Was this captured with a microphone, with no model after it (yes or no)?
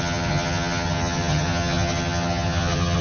no